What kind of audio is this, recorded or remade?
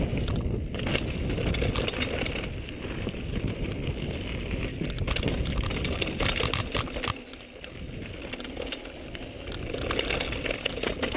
recorded